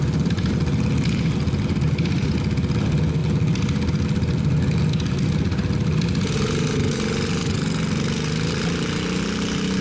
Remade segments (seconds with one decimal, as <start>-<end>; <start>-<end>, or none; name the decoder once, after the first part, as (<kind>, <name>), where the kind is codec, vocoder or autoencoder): none